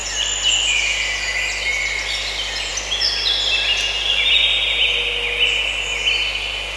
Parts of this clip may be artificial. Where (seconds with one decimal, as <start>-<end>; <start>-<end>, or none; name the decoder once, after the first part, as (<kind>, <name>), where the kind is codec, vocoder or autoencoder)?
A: none